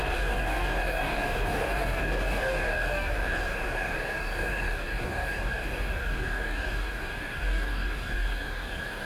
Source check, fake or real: fake